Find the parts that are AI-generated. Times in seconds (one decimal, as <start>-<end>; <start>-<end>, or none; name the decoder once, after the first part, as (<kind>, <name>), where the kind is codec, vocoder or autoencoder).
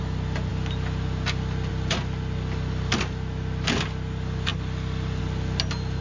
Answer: none